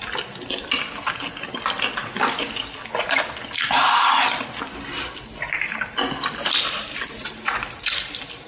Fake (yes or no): no